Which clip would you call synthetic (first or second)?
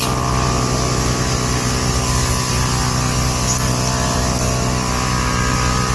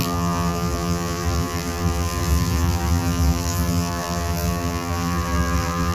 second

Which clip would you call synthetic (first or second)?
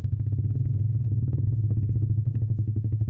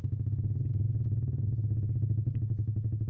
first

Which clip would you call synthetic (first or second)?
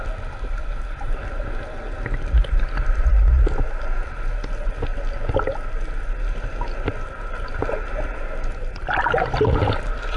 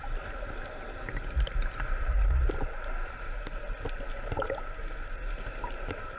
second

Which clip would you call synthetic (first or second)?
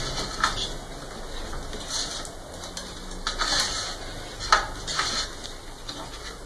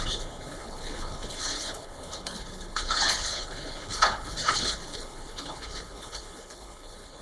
second